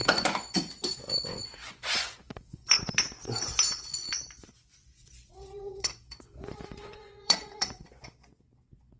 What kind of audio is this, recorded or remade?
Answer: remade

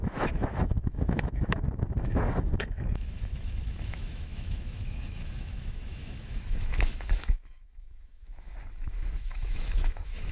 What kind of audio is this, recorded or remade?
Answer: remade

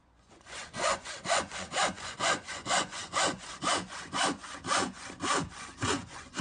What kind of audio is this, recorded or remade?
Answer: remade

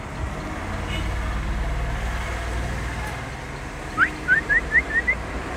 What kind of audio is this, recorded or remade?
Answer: recorded